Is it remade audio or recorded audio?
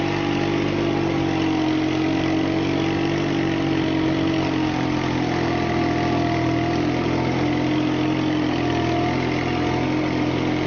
recorded